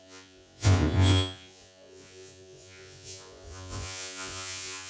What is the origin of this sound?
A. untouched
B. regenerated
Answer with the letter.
B